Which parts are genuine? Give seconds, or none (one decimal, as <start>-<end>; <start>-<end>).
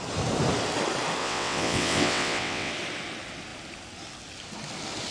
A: 0.0-1.2; 2.7-5.1